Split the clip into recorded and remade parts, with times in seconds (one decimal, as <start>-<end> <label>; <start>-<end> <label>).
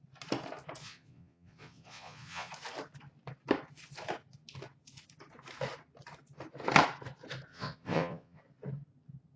0.0-0.8 recorded; 0.8-2.5 remade; 2.5-7.5 recorded; 7.5-8.4 remade; 8.4-9.4 recorded